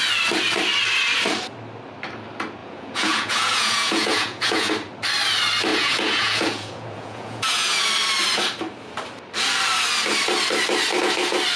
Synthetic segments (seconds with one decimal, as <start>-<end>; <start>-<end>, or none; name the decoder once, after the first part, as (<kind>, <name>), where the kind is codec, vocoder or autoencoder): 2.6-4.7 (vocoder, Vocos); 5.7-7.9